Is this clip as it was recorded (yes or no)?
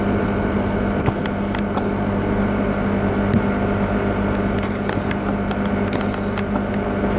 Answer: yes